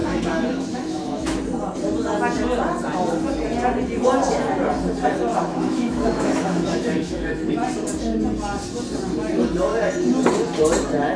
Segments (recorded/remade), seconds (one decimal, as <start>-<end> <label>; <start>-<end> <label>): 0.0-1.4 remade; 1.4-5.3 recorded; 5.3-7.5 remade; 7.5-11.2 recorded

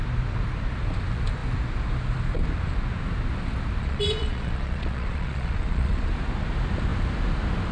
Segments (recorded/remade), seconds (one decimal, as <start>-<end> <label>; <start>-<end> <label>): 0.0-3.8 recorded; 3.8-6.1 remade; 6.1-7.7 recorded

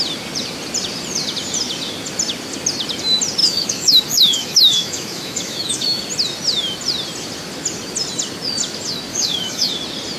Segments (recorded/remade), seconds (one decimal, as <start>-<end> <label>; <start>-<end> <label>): 0.0-3.4 recorded; 3.4-6.0 remade; 6.0-9.1 recorded; 9.1-9.7 remade; 9.7-10.2 recorded